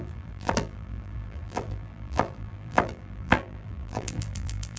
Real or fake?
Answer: fake